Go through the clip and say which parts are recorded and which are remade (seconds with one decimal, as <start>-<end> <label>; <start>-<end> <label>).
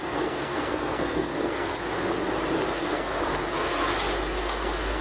0.0-1.7 remade; 1.7-2.8 recorded; 2.8-3.3 remade; 3.3-4.4 recorded; 4.4-5.0 remade